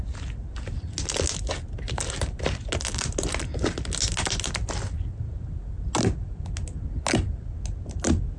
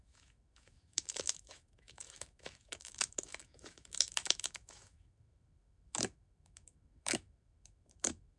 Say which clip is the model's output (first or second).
second